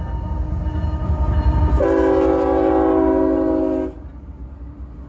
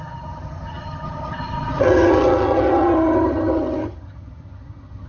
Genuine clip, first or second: first